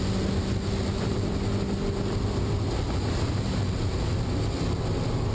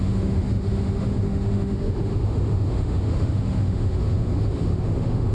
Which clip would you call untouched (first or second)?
first